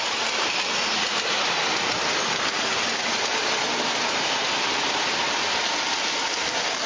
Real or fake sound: real